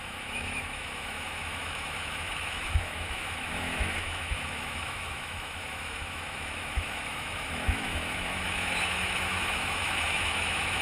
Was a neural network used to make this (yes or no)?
yes